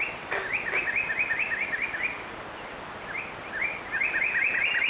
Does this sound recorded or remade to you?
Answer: recorded